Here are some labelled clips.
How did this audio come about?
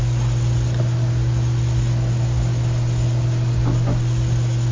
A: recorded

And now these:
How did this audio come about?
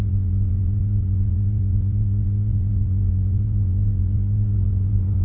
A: remade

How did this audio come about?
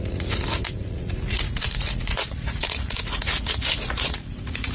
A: remade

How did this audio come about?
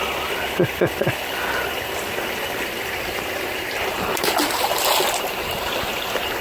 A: recorded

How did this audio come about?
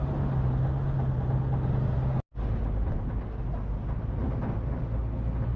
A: recorded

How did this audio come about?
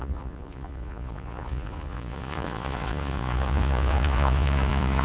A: remade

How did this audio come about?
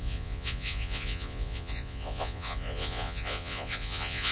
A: remade